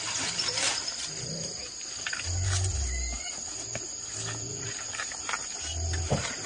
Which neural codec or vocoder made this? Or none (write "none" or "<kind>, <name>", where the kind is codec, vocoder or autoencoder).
none